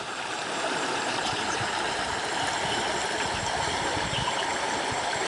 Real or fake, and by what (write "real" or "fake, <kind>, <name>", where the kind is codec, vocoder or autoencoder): real